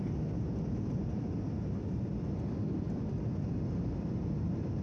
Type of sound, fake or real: real